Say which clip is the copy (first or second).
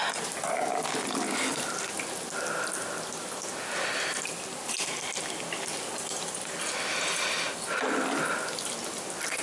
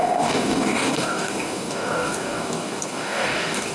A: second